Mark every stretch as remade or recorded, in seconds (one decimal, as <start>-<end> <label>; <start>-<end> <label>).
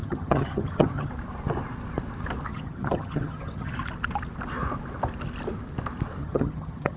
0.0-1.1 remade; 1.1-2.5 recorded; 2.5-3.7 remade; 3.7-6.2 recorded; 6.2-7.0 remade